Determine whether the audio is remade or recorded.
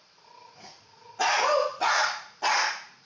remade